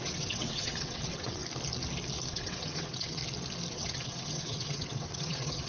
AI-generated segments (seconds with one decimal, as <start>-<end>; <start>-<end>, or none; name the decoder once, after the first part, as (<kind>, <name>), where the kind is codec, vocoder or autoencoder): 0.0-1.4 (vocoder, WaveNeXt); 2.3-3.2; 3.7-5.7